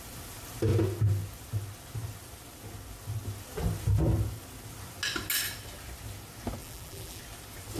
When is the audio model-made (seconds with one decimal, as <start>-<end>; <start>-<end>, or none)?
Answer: 6.6-7.2